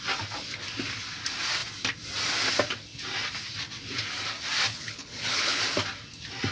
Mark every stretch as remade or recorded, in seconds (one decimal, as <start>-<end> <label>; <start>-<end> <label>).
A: 0.0-4.7 recorded; 4.7-5.6 remade; 5.6-6.5 recorded